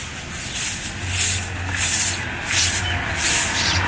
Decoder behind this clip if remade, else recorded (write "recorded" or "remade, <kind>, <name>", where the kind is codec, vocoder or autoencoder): recorded